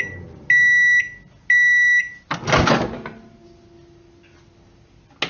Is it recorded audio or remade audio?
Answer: recorded